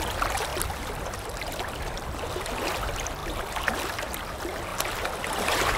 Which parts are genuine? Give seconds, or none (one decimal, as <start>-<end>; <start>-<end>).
0.5-2.5; 3.2-3.7; 4.7-5.2